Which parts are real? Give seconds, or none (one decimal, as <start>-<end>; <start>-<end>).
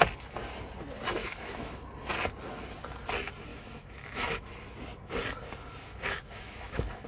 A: 0.0-1.2; 1.8-3.5; 4.5-5.9